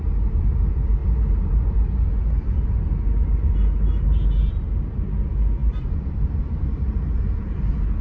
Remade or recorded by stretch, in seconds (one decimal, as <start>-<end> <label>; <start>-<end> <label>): 0.0-8.0 recorded